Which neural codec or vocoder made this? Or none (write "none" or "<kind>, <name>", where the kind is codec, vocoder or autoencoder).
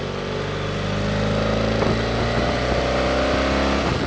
none